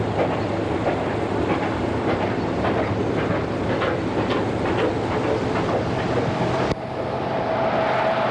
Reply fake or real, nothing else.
fake